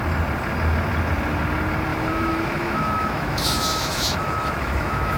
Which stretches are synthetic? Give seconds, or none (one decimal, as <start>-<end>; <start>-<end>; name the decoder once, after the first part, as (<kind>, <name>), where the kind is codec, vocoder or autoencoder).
1.9-5.2 (autoencoder, DAC-VAE)